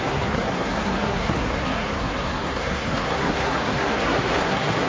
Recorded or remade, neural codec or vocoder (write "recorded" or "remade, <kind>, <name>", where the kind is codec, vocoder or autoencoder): remade, codec, SNAC